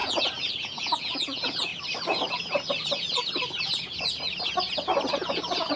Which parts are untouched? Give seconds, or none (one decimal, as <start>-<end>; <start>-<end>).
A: 1.7-5.1